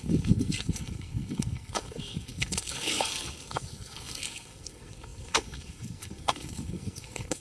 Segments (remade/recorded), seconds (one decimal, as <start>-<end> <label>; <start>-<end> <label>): 0.0-7.4 remade

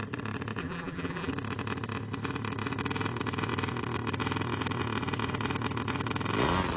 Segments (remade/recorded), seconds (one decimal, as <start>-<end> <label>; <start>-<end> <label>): 0.0-0.6 recorded; 0.6-1.3 remade; 1.3-6.8 recorded

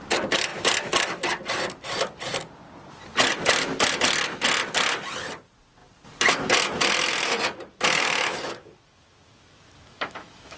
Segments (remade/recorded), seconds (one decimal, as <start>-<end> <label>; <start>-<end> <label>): 0.0-7.7 recorded; 7.7-10.6 remade